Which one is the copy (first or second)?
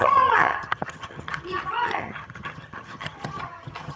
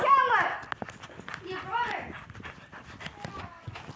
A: first